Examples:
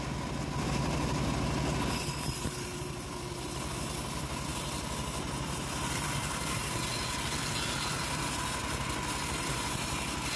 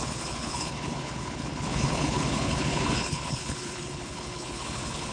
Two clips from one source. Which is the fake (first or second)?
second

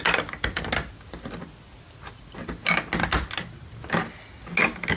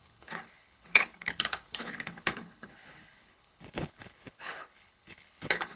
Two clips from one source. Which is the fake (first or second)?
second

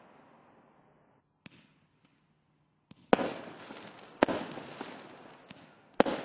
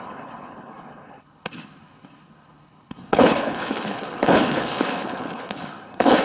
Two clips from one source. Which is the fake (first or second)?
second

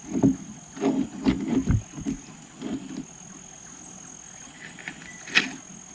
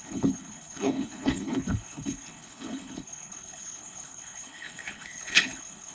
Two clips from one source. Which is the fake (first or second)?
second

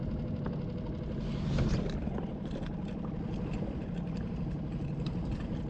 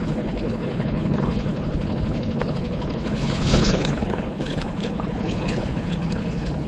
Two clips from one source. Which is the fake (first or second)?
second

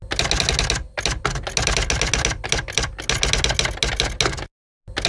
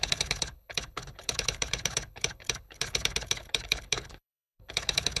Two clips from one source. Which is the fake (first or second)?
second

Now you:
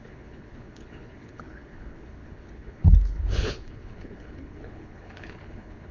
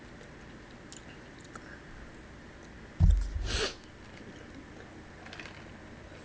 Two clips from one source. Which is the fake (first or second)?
first